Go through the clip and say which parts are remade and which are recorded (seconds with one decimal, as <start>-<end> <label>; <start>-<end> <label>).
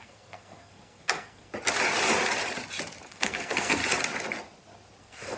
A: 0.0-1.5 remade; 1.5-3.1 recorded; 3.1-3.8 remade; 3.8-5.0 recorded; 5.0-5.4 remade